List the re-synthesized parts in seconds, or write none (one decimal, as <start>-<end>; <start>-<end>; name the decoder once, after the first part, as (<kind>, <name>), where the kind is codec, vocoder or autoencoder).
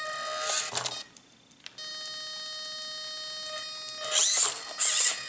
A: none